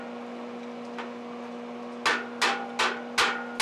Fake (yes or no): no